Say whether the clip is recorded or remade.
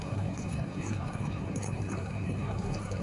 remade